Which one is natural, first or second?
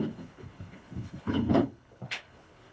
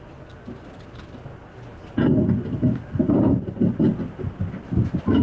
second